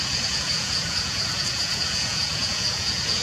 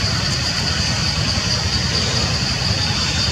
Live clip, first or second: second